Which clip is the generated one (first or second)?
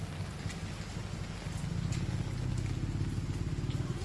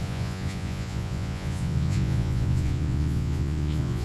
second